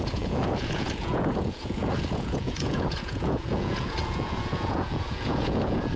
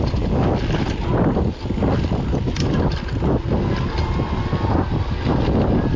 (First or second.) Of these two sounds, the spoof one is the first